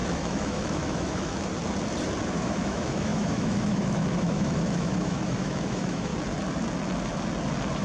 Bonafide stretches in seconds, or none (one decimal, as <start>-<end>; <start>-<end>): 1.5-2.3; 6.1-7.8